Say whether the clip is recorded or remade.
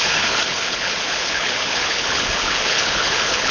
remade